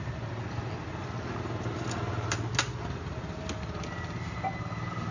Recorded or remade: recorded